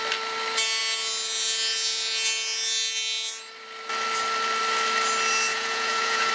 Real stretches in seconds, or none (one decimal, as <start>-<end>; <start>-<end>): 0.0-5.5